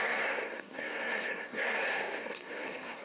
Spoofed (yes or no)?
yes